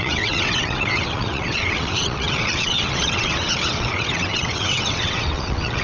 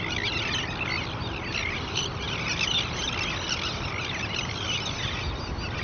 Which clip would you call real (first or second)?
second